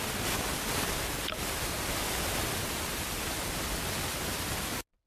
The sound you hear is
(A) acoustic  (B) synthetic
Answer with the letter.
A